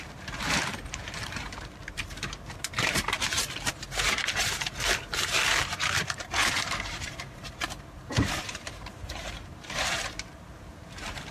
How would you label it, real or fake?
fake